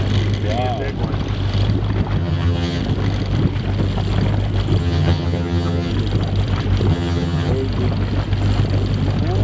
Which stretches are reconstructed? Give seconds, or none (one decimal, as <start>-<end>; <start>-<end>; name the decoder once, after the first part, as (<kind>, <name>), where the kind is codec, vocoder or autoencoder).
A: 2.2-2.8 (vocoder, HiFi-GAN); 4.8-5.9; 6.9-7.5